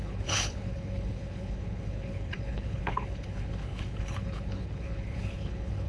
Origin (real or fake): fake